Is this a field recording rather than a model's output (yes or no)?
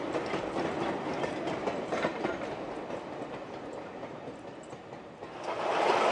yes